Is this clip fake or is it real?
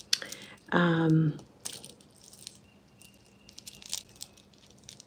real